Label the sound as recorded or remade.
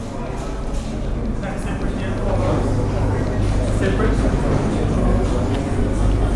recorded